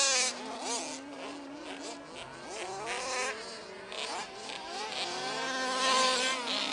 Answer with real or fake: real